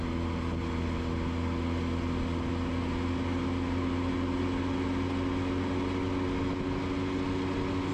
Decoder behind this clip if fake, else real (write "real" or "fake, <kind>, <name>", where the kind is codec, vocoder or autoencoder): real